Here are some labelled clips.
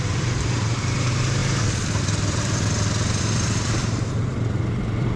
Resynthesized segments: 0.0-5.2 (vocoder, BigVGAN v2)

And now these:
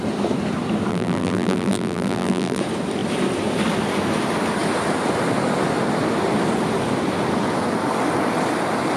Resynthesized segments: 0.9-2.6 (vocoder, BigVGAN v2)

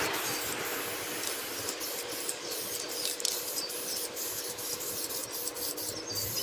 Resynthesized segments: 0.0-5.2 (vocoder, BigVGAN v2); 5.7-6.4

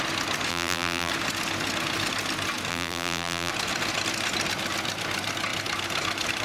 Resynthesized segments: 0.5-1.1 (vocoder, BigVGAN v2); 2.7-3.5

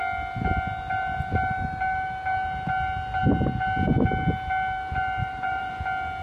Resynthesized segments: 5.2-5.7 (vocoder, BigVGAN v2)

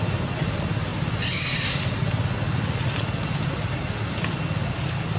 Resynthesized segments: none